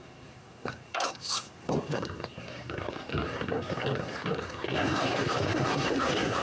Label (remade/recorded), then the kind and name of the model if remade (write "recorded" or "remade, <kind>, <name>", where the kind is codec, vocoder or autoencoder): remade, codec, SNAC